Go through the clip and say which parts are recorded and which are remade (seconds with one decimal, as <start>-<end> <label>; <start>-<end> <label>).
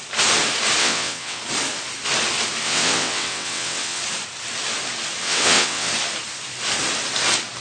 0.0-0.8 recorded; 0.8-1.4 remade; 1.4-2.6 recorded; 2.6-4.0 remade; 4.0-5.2 recorded; 5.2-5.9 remade; 5.9-7.6 recorded